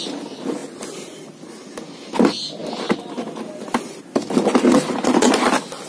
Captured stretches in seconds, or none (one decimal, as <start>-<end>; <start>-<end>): 0.0-5.9